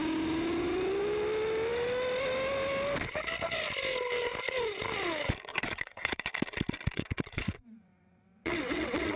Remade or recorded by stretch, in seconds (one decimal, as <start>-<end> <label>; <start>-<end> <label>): 0.0-5.5 recorded; 5.5-6.3 remade; 6.3-6.9 recorded; 6.9-9.2 remade